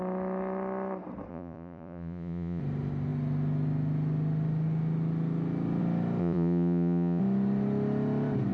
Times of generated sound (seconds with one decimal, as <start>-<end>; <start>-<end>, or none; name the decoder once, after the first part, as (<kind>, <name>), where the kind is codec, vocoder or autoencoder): 1.3-2.6 (vocoder, Vocos); 6.2-7.2